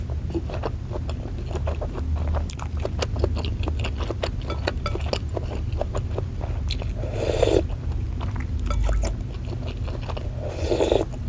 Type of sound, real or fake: real